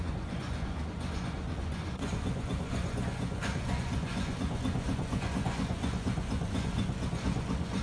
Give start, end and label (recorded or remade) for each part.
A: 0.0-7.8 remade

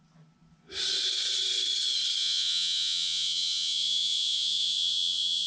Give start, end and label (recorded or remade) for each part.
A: 0.0-2.2 recorded; 2.2-5.5 remade